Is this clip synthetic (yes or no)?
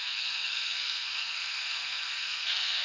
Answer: yes